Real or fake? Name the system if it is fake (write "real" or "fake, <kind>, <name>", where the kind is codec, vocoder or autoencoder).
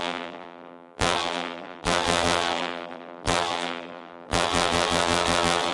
fake, vocoder, BigVGAN v2